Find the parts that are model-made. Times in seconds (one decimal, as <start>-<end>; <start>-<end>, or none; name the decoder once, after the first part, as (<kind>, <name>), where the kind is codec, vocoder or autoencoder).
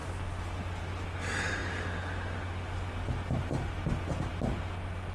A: none